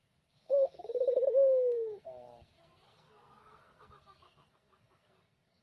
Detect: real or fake fake